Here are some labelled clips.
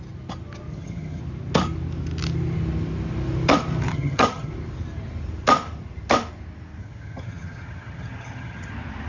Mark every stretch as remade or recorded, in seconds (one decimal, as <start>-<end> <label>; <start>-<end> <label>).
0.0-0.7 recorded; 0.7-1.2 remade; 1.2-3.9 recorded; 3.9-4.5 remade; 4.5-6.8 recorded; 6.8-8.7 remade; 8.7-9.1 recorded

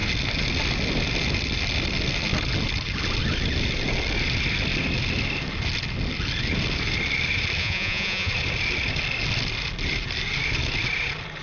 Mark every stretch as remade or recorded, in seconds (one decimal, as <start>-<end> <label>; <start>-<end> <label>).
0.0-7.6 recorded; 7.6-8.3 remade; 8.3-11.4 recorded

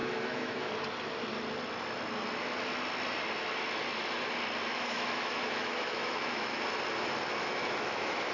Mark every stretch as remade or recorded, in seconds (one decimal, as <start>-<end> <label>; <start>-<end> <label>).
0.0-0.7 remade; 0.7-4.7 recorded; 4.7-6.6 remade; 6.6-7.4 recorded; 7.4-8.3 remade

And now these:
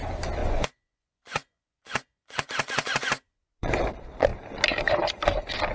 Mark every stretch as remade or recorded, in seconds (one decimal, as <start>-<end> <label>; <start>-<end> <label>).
0.0-0.4 recorded; 0.4-3.8 remade; 3.8-5.7 recorded

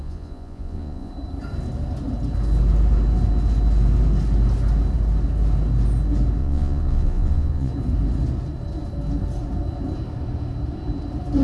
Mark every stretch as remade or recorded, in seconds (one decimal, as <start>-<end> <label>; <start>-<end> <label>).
0.0-1.1 remade; 1.1-6.4 recorded; 6.4-7.7 remade; 7.7-11.4 recorded

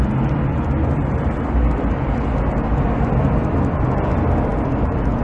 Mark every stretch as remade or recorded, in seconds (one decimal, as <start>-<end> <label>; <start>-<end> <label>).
0.0-5.2 recorded